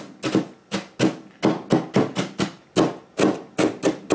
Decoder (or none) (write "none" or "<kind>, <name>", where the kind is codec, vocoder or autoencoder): none